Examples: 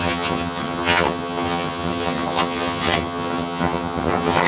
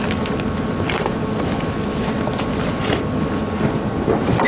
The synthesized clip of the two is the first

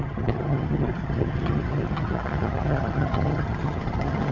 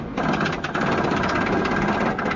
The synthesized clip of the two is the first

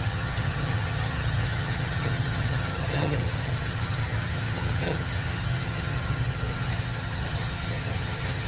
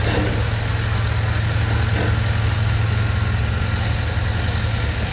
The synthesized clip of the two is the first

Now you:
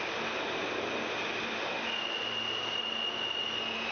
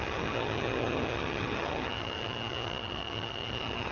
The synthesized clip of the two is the second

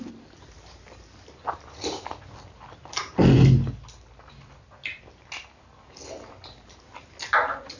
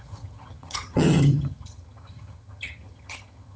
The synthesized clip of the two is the second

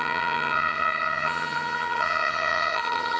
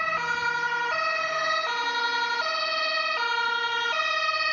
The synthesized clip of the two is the first